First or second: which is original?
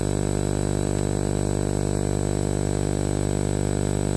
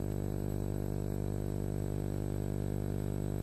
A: first